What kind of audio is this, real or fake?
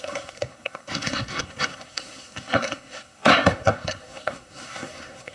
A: fake